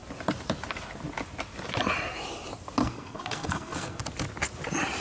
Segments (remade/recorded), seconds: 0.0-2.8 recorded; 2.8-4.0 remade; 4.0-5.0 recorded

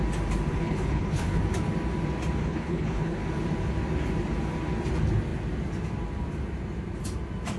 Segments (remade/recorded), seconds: 0.0-0.5 recorded; 0.5-1.4 remade; 1.4-2.4 recorded; 2.4-3.2 remade; 3.2-7.6 recorded

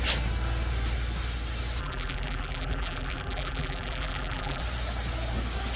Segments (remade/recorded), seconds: 0.0-1.8 recorded; 1.8-4.6 remade; 4.6-5.8 recorded

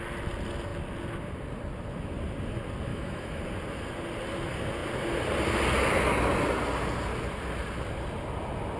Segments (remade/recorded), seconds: 0.0-2.9 recorded; 2.9-3.4 remade; 3.4-8.8 recorded

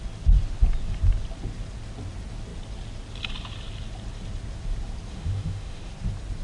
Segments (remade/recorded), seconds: 0.0-5.1 recorded; 5.1-5.9 remade; 5.9-6.4 recorded